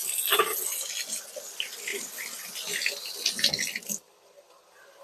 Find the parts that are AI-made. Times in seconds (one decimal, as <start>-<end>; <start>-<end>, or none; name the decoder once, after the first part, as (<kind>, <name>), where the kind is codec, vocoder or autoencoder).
1.9-5.0 (vocoder, BigVGAN v2)